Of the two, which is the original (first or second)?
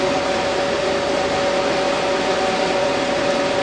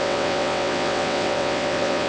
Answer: first